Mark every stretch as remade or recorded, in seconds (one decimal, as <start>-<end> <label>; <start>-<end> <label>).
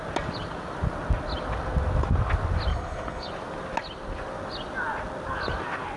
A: 0.0-2.7 recorded; 2.7-3.3 remade; 3.3-6.0 recorded